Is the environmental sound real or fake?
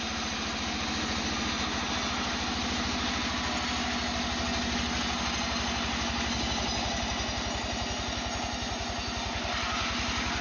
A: real